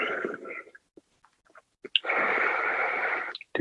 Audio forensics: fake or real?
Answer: real